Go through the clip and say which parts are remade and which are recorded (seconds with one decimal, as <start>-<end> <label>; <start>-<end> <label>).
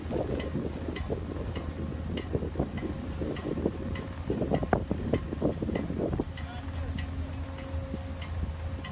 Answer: 0.0-8.9 recorded